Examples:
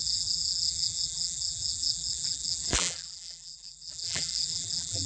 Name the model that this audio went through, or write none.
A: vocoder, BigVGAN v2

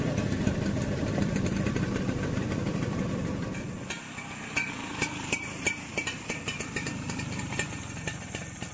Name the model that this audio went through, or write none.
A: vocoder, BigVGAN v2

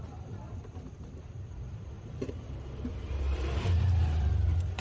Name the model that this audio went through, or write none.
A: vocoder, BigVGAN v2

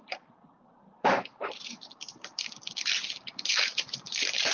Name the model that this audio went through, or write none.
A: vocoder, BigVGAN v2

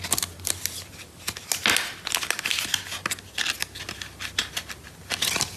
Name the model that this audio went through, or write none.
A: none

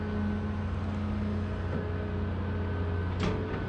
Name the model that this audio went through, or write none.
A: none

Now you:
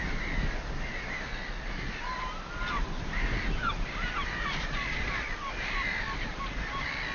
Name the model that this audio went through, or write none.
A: none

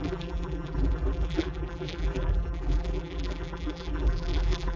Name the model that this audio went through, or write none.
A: vocoder, BigVGAN v2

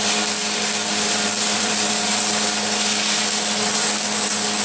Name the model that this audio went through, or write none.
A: vocoder, BigVGAN v2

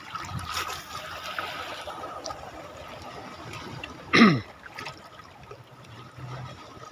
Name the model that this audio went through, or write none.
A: vocoder, BigVGAN v2